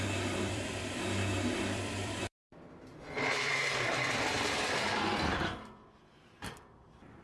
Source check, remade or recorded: remade